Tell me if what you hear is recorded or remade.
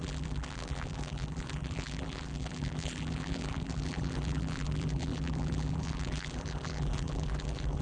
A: remade